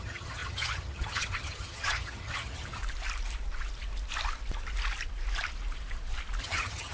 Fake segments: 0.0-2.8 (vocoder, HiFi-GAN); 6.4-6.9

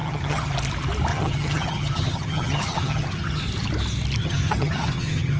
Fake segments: 0.0-0.5 (vocoder, HiFi-GAN); 1.1-3.4; 4.2-5.4

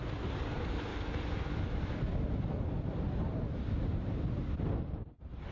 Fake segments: none